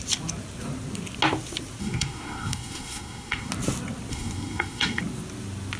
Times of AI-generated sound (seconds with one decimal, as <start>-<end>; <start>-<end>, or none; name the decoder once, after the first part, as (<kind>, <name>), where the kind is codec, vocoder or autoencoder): 1.8-3.5 (codec, SNAC); 4.1-5.0